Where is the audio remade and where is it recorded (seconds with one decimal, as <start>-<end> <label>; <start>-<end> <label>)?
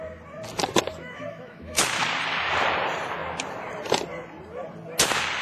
0.0-0.9 recorded; 0.9-1.8 remade; 1.8-5.4 recorded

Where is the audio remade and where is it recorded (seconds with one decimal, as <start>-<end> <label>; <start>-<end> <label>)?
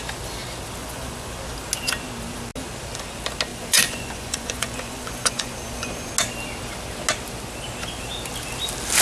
0.0-0.8 recorded; 0.8-1.4 remade; 1.4-3.5 recorded; 3.5-6.1 remade; 6.1-9.0 recorded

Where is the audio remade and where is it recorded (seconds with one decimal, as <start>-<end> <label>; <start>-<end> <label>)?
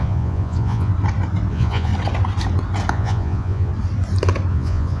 0.0-0.9 remade; 0.9-1.5 recorded; 1.5-1.9 remade; 1.9-2.9 recorded; 2.9-3.7 remade; 3.7-4.5 recorded; 4.5-5.0 remade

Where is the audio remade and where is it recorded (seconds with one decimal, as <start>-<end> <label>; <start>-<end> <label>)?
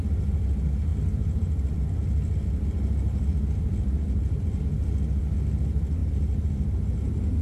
0.0-0.9 recorded; 0.9-4.6 remade; 4.6-6.0 recorded; 6.0-7.4 remade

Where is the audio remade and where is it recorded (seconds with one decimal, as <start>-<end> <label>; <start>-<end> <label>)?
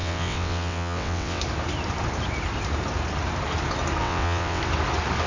0.0-1.4 remade; 1.4-4.0 recorded; 4.0-4.6 remade; 4.6-5.3 recorded